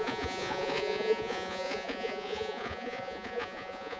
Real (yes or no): no